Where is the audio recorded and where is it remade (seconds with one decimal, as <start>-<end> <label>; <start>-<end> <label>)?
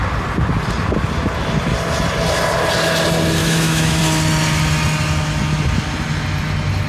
0.0-3.4 recorded; 3.4-4.0 remade; 4.0-6.9 recorded